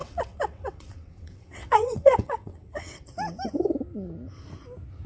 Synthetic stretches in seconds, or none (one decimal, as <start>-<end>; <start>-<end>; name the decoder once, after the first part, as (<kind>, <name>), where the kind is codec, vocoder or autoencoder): 0.0-3.1 (vocoder, WaveNeXt)